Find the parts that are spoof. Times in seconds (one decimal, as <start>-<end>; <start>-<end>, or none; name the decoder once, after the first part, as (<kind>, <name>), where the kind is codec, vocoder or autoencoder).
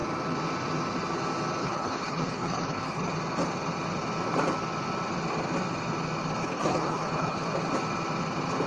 1.6-3.1 (codec, HILCodec); 6.4-7.4